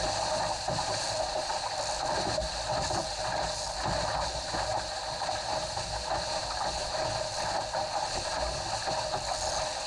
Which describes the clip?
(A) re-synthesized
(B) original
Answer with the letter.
B